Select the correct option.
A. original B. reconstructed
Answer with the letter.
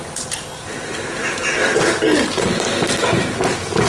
A